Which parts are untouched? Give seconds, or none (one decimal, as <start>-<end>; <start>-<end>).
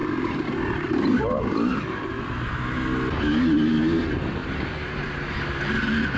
2.2-4.4; 5.5-6.2